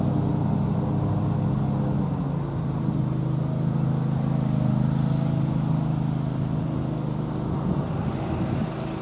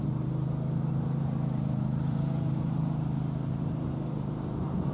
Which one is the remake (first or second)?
second